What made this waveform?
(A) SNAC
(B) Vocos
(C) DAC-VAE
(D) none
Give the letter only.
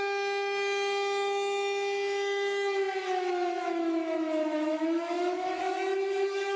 C